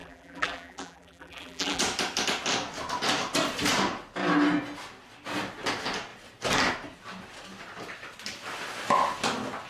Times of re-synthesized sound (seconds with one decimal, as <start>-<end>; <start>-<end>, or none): 0.0-1.8

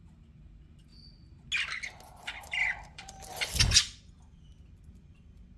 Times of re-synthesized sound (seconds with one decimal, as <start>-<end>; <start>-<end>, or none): 2.6-3.6

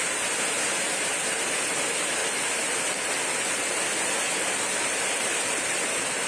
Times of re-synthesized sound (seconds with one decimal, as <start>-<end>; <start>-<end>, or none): none